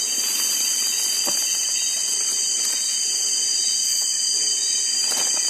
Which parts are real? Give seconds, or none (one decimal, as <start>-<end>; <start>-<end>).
0.0-5.5